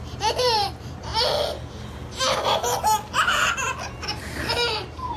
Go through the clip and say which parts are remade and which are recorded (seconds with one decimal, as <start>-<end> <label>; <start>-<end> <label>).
0.0-1.1 remade; 1.1-4.2 recorded; 4.2-5.2 remade